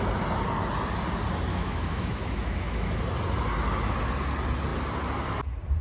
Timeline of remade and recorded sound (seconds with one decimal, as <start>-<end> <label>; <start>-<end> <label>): 0.0-1.5 recorded; 1.5-3.0 remade; 3.0-5.8 recorded